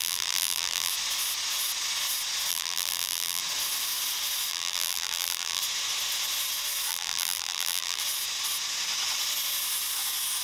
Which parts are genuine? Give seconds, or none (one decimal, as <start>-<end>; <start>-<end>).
0.9-2.5; 3.4-4.5; 5.6-6.9; 8.0-10.4